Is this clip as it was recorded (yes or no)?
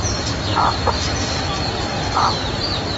yes